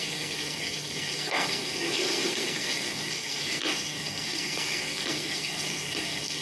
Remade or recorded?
remade